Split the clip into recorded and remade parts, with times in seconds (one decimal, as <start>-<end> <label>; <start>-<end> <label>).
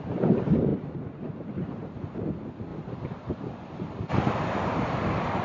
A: 0.0-0.7 recorded; 0.7-2.0 remade; 2.0-2.7 recorded; 2.7-3.3 remade; 3.3-5.4 recorded